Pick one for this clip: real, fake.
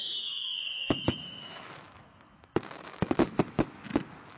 fake